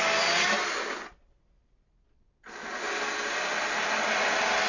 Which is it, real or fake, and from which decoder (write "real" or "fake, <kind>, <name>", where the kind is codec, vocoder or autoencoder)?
real